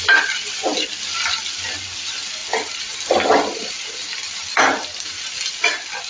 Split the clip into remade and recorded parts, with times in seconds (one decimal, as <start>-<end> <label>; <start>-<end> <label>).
0.0-6.1 recorded